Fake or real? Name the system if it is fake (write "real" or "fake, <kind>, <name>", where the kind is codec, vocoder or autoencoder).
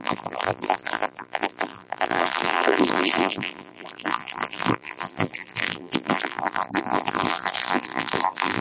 fake, vocoder, BigVGAN v2